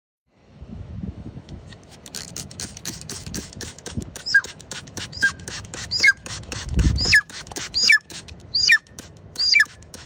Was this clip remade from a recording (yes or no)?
yes